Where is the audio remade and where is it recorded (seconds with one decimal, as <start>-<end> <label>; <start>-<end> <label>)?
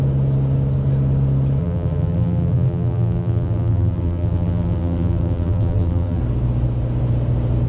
0.0-1.6 recorded; 1.6-6.2 remade; 6.2-7.7 recorded